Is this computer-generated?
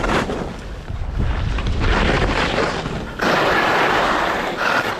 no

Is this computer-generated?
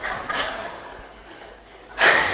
yes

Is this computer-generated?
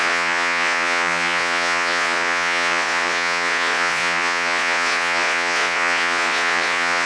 yes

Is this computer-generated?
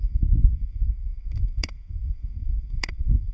yes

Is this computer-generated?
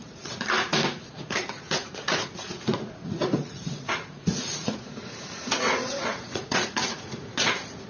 yes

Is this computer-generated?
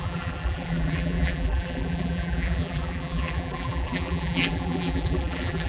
yes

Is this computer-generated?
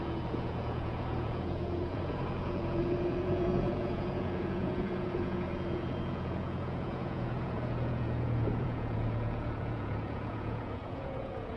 yes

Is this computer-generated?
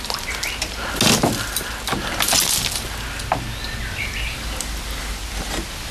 no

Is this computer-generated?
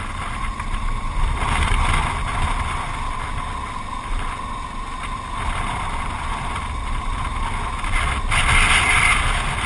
no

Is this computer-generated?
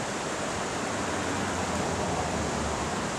yes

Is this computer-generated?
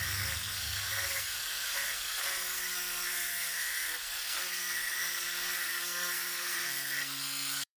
yes